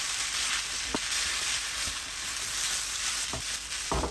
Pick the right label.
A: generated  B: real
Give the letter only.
B